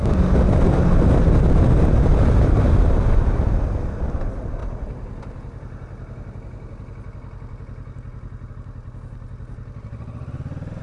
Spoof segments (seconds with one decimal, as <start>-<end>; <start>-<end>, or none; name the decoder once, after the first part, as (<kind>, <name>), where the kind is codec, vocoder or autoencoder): none

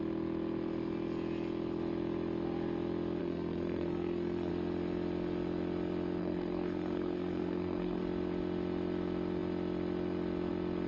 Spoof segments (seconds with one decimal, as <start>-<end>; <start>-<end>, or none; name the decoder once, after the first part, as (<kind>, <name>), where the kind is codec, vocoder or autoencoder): 3.2-4.5 (codec, SNAC); 6.2-8.0

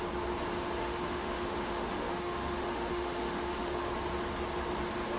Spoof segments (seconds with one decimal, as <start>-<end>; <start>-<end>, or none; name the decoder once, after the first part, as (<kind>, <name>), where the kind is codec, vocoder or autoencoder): 0.8-3.9 (autoencoder, DAC-VAE)